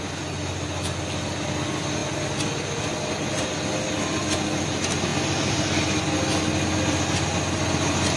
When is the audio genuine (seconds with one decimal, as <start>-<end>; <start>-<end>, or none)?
0.0-8.2